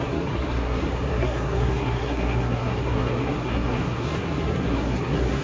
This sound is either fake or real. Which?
fake